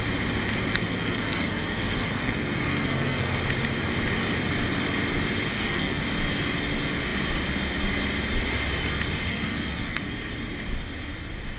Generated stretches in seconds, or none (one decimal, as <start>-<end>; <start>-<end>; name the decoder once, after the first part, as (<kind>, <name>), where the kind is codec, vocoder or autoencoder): 0.7-3.4 (codec, SNAC); 5.5-6.0; 9.3-10.0

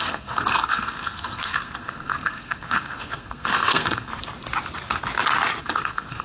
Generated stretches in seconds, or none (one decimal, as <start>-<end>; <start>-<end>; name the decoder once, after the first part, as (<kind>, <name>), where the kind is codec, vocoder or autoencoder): 0.0-4.1 (codec, SNAC); 5.6-6.2

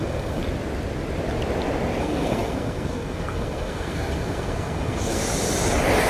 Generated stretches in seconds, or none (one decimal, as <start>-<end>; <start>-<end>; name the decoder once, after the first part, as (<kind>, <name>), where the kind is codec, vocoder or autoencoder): 0.0-0.4 (codec, SNAC); 2.0-5.2

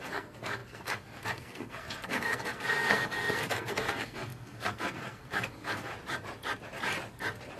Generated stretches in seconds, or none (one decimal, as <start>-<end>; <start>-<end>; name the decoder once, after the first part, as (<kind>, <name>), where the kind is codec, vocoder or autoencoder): 0.0-5.9 (codec, SNAC)

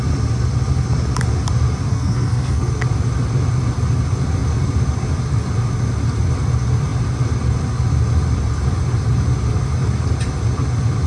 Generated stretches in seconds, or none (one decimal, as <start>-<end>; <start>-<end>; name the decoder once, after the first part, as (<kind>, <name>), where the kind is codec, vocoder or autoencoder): 1.9-2.7 (codec, SNAC)

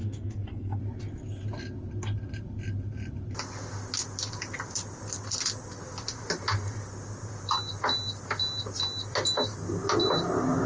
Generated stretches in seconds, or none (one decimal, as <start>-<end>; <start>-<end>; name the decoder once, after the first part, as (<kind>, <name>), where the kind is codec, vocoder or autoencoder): 0.0-0.8 (codec, SNAC)